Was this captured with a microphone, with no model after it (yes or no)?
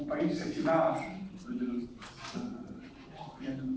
yes